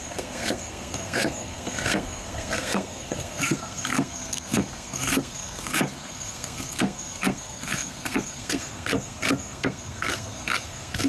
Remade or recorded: remade